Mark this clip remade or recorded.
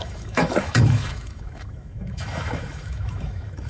remade